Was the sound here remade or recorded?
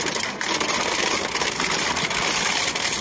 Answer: recorded